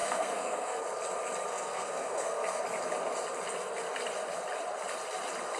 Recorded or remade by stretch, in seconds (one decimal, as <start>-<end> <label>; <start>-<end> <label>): 0.0-0.8 remade; 0.8-1.5 recorded; 1.5-2.6 remade; 2.6-5.6 recorded